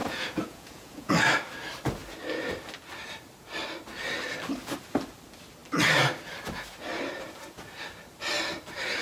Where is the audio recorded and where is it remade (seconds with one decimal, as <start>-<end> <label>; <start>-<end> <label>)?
0.0-1.1 remade; 1.1-9.0 recorded